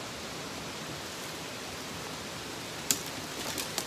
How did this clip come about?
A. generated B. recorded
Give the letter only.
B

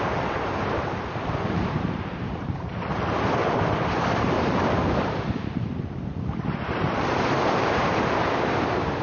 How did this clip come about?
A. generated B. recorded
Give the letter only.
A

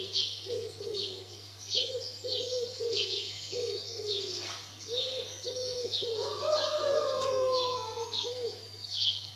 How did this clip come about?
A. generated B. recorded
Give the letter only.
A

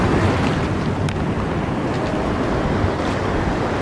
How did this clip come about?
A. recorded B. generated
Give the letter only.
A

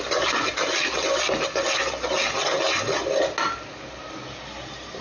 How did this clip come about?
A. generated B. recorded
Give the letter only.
B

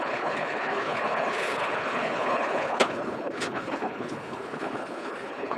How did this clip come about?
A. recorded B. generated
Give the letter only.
B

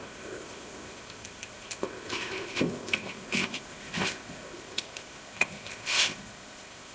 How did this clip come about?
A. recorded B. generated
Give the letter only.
B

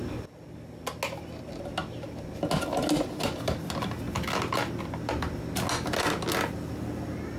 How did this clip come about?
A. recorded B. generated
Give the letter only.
A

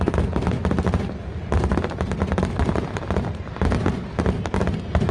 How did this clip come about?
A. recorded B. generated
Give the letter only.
A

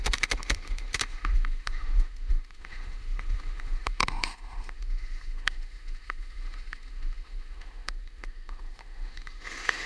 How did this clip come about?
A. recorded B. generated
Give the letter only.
B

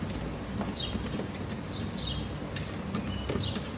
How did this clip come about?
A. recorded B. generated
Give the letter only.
A